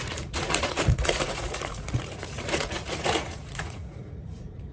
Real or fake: fake